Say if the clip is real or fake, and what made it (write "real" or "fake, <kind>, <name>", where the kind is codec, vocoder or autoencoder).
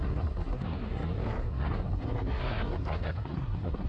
fake, codec, SNAC